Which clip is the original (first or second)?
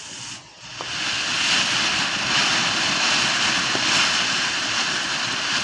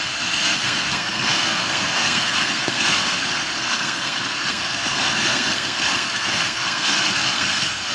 first